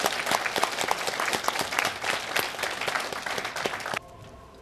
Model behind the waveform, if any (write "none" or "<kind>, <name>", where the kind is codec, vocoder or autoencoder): none